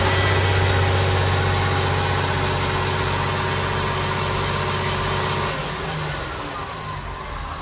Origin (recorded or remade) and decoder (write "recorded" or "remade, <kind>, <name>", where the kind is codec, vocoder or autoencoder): recorded